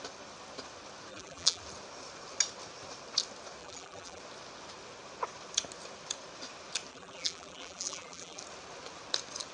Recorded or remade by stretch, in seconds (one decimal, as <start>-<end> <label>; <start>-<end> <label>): 0.0-1.1 recorded; 1.1-1.6 remade; 1.6-3.6 recorded; 3.6-4.2 remade; 4.2-6.9 recorded; 6.9-8.4 remade; 8.4-9.5 recorded